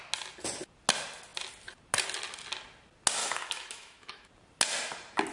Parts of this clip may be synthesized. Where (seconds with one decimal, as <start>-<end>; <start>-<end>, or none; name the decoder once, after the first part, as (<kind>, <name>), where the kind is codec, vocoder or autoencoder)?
3.2-4.3 (autoencoder, DAC-VAE)